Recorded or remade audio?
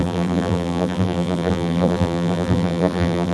remade